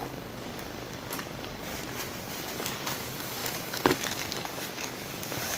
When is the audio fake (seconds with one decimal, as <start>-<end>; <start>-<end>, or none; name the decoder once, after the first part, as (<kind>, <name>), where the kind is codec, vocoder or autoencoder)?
0.0-1.7 (codec, DAC); 2.4-5.6